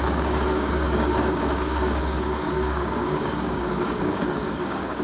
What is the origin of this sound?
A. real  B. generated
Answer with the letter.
B